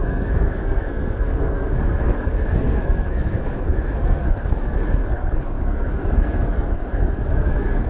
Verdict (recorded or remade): remade